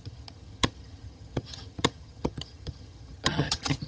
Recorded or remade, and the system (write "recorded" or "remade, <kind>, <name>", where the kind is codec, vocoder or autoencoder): remade, vocoder, HiFi-GAN